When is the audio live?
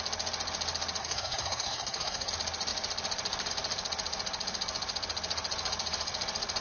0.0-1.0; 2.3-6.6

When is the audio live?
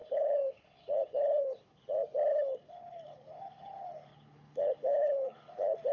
1.8-2.3